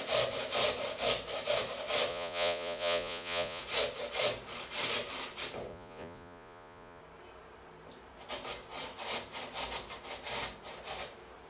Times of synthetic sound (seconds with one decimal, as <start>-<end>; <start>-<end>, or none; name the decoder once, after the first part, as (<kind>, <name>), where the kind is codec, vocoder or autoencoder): 2.1-3.6 (vocoder, Vocos); 5.7-7.0